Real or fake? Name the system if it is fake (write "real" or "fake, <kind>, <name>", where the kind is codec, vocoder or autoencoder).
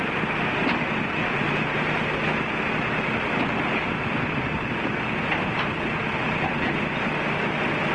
real